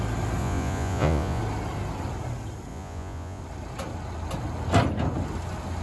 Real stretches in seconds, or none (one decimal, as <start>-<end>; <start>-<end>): 0.0-0.4; 1.4-2.7; 3.4-5.8